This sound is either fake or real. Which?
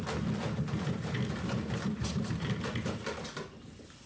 real